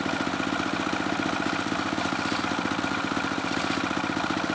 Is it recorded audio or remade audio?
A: recorded